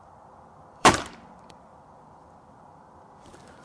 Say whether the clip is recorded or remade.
remade